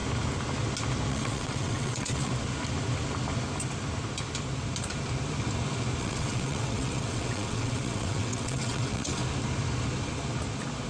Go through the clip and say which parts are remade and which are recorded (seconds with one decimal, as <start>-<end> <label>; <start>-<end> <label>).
0.0-1.1 recorded; 1.1-2.3 remade; 2.3-6.0 recorded; 6.0-9.2 remade; 9.2-10.9 recorded